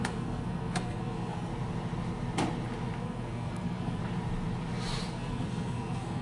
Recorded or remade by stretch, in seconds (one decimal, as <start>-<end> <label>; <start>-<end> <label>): 0.0-1.5 remade; 1.5-3.0 recorded; 3.0-4.0 remade; 4.0-5.1 recorded; 5.1-6.2 remade